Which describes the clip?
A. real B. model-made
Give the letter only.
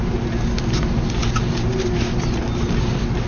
A